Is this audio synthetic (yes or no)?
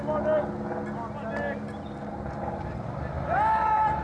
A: no